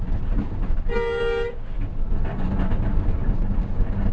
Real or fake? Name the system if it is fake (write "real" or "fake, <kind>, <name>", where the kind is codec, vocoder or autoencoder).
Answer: real